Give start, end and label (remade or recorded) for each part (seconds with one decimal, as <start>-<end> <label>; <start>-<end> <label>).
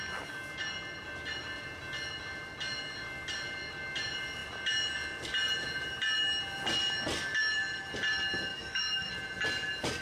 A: 0.0-8.5 recorded; 8.5-9.1 remade; 9.1-10.0 recorded